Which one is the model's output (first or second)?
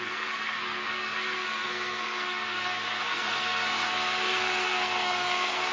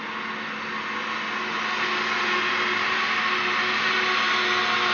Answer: first